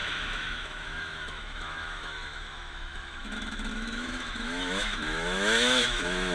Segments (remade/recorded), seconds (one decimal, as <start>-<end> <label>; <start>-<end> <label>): 0.0-6.3 remade